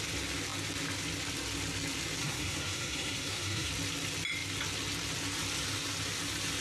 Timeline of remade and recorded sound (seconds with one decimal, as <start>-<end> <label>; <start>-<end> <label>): 0.0-2.2 recorded; 2.2-3.7 remade; 3.7-6.6 recorded